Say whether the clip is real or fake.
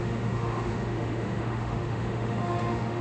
fake